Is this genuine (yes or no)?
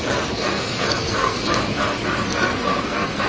no